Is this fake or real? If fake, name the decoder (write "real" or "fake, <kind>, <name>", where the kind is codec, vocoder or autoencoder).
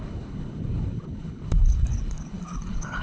fake, codec, HILCodec